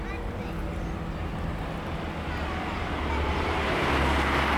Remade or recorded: recorded